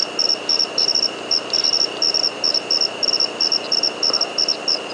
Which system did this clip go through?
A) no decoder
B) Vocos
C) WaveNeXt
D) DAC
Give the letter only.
A